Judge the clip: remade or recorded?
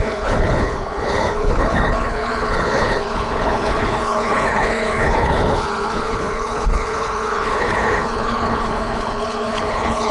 remade